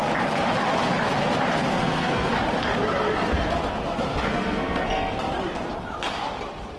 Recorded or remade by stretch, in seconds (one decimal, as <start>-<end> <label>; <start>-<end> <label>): 0.0-1.7 recorded; 1.7-2.3 remade; 2.3-4.3 recorded; 4.3-5.2 remade; 5.2-6.8 recorded